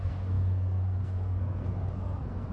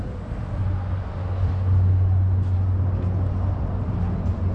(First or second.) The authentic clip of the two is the second